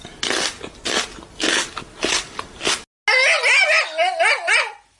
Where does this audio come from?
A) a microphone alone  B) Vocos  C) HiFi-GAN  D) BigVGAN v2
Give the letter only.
A